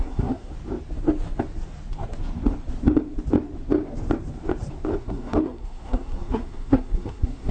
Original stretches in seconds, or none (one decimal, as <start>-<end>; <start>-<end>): 0.5-5.0